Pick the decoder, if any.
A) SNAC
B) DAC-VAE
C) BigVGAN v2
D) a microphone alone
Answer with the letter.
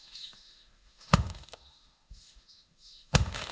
B